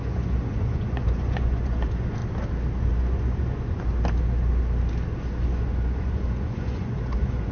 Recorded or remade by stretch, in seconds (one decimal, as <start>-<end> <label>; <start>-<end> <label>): 0.0-2.2 remade; 2.2-2.8 recorded; 2.8-3.9 remade; 3.9-5.5 recorded; 5.5-7.5 remade